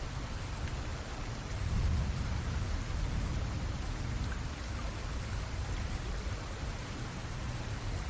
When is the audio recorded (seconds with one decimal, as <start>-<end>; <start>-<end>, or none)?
0.0-0.9; 3.5-7.2